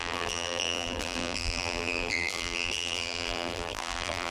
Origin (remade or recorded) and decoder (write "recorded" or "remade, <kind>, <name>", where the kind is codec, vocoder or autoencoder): remade, vocoder, BigVGAN v2